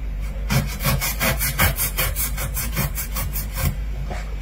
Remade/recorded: remade